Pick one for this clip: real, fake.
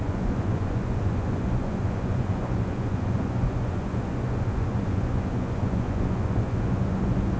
fake